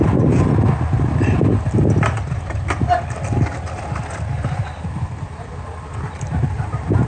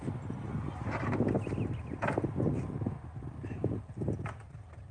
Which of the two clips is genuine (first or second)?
second